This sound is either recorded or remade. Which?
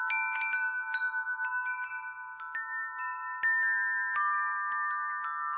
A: recorded